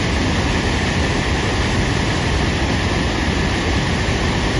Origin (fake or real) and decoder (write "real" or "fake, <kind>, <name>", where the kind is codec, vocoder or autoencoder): real